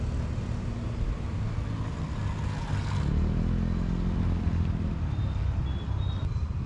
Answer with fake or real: real